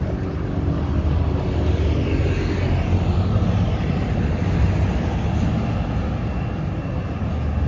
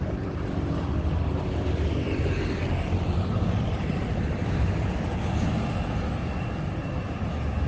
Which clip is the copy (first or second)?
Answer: second